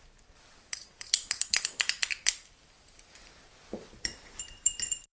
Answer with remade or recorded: remade